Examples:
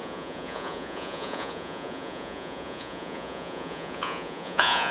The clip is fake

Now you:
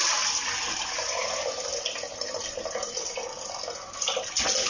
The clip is real